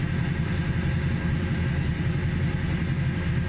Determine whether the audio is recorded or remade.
recorded